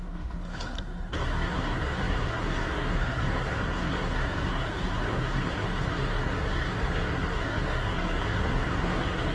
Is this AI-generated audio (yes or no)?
yes